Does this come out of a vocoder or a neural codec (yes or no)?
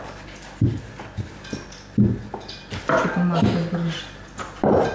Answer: no